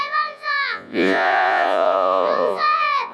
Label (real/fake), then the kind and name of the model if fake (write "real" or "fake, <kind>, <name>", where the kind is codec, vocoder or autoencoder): fake, vocoder, Vocos